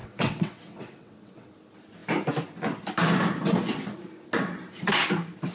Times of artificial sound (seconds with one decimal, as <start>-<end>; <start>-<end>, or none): 0.0-1.5